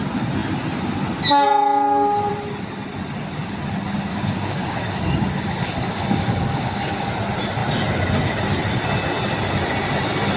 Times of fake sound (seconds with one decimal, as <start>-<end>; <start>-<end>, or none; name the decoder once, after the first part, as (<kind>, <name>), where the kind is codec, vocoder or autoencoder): 4.1-7.1 (codec, DAC)